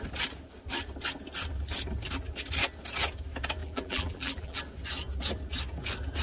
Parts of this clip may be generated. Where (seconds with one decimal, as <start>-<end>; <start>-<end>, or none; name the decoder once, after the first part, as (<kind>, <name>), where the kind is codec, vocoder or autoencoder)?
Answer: 3.6-4.6 (vocoder, BigVGAN v2)

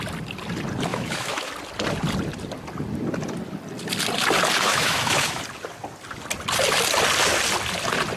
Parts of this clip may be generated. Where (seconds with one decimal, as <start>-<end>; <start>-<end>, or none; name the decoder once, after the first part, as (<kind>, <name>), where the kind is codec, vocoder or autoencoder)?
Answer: 0.9-1.5 (autoencoder, DAC-VAE); 4.7-5.4

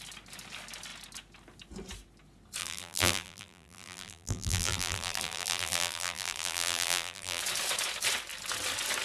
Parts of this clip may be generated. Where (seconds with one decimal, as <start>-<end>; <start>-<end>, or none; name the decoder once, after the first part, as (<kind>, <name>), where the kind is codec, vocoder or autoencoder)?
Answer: 2.6-7.4 (vocoder, BigVGAN v2)

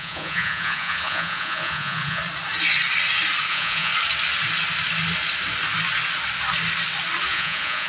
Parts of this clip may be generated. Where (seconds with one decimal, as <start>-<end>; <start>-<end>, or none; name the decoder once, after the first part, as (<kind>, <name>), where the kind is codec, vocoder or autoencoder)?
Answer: 0.0-2.2 (vocoder, Vocos); 3.5-3.9; 7.3-7.9

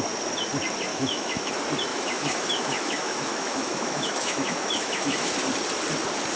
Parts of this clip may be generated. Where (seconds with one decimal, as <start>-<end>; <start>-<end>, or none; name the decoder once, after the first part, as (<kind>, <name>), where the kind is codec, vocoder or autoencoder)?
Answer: 0.9-1.5 (autoencoder, DAC-VAE); 1.9-5.3

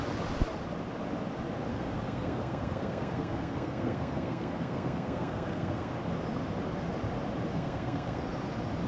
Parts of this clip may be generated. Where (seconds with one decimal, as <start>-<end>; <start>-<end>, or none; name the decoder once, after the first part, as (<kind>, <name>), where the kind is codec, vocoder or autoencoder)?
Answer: 1.7-5.9 (codec, SNAC); 7.5-8.2

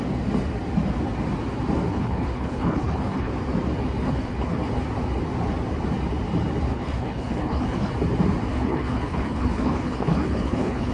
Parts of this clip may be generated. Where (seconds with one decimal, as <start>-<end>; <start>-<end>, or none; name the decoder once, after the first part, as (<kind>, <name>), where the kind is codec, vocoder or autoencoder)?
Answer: 1.9-3.3 (codec, HILCodec); 4.0-4.7; 6.7-7.9; 8.5-10.9

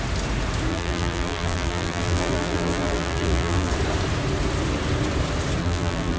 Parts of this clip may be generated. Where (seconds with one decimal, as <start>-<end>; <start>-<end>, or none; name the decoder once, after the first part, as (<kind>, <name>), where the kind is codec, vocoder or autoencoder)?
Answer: 0.7-3.7 (vocoder, BigVGAN v2); 5.6-6.2